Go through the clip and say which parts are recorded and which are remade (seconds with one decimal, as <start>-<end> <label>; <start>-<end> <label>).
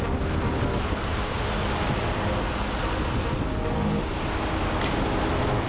0.0-5.7 recorded